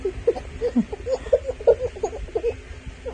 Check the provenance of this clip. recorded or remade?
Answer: recorded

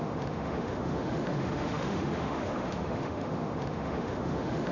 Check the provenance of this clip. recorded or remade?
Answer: remade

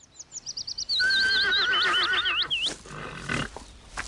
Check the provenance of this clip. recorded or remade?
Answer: recorded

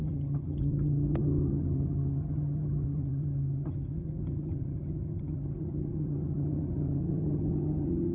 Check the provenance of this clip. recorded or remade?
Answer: remade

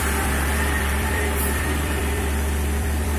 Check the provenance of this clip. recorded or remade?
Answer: remade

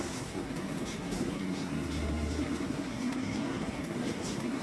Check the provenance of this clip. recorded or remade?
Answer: remade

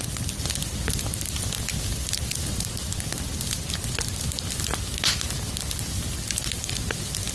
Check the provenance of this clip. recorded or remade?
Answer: recorded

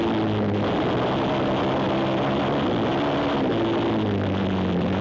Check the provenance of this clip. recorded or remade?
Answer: recorded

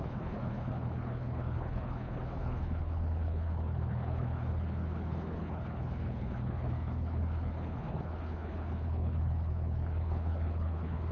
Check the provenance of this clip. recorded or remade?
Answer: remade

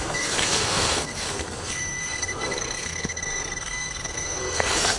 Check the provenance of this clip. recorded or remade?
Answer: remade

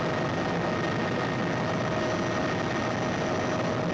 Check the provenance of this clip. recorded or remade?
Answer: recorded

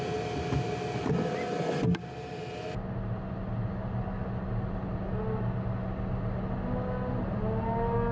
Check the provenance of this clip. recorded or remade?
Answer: recorded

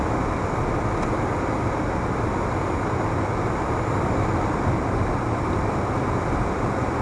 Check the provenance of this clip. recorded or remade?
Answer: recorded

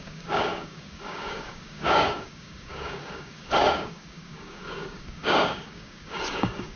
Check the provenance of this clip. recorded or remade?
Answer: remade